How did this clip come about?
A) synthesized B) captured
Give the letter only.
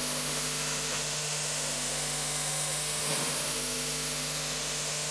A